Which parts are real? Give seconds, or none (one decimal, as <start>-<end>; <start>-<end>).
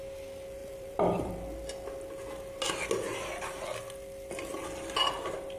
0.0-0.6; 1.3-5.6